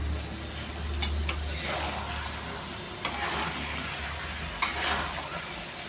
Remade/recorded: recorded